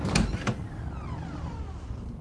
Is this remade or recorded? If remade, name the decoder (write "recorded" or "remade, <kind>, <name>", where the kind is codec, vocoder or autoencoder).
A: recorded